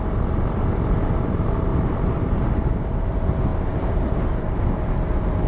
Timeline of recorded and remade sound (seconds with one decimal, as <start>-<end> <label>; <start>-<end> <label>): 0.0-1.7 recorded; 1.7-2.6 remade; 2.6-3.5 recorded; 3.5-4.6 remade; 4.6-5.5 recorded